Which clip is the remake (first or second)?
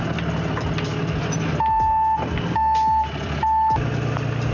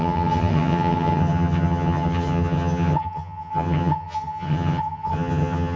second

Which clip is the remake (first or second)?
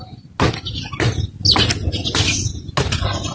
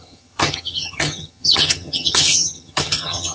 second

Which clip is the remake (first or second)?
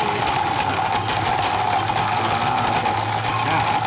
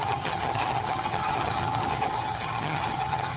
second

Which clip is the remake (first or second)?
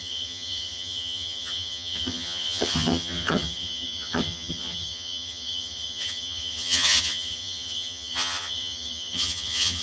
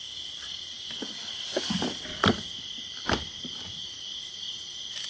first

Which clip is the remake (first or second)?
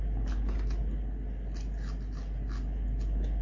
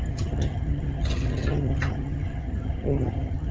second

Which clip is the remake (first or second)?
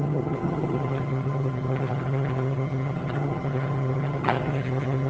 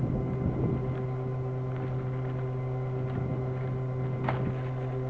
first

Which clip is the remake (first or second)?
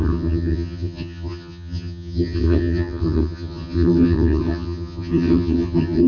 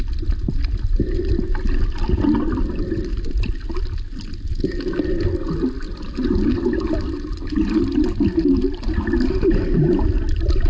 first